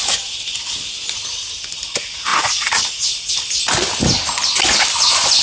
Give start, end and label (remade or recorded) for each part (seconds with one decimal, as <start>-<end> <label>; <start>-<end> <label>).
0.0-5.4 recorded